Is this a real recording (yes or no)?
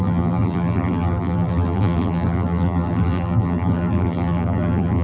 no